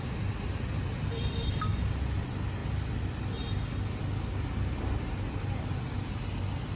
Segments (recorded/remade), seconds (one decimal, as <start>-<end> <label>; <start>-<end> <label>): 0.0-6.8 recorded